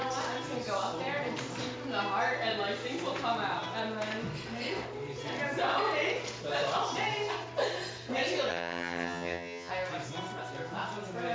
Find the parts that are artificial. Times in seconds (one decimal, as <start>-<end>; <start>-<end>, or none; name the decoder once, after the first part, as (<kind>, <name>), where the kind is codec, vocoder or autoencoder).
8.5-9.7 (vocoder, HiFi-GAN)